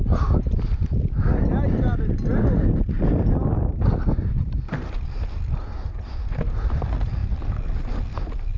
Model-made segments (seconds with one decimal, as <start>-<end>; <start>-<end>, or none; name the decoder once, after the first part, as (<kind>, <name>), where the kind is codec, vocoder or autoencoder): none